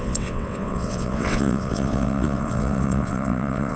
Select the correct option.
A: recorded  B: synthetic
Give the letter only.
B